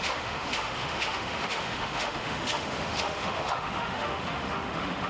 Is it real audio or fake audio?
fake